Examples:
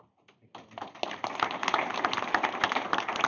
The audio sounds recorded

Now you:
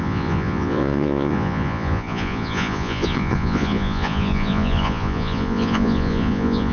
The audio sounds remade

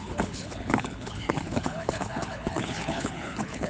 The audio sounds remade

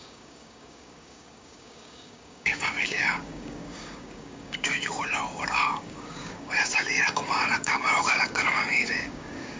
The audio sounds remade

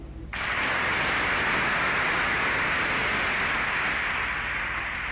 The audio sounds remade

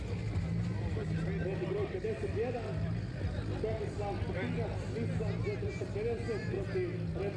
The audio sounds recorded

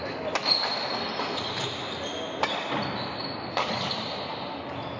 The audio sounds recorded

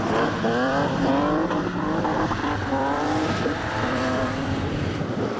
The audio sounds remade